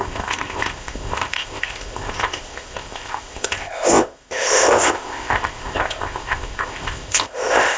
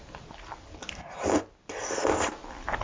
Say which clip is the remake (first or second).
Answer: first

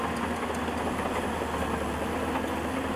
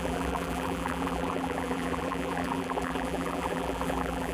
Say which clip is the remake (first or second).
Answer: second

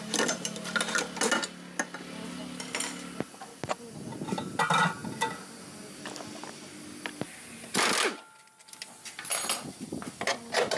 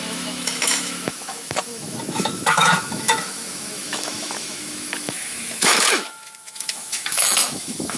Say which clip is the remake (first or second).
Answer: second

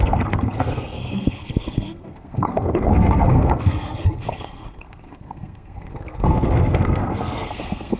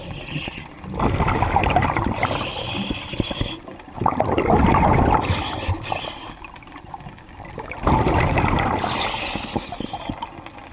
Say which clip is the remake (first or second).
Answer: first